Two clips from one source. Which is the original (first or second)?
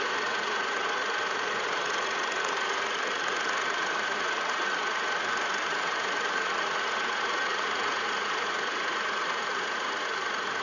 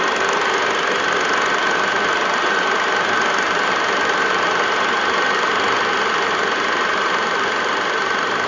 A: second